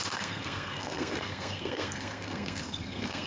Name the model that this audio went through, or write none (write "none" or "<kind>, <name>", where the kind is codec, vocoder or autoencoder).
codec, SNAC